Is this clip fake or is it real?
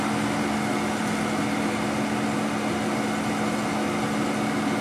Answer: real